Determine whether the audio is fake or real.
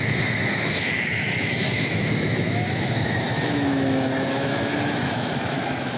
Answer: fake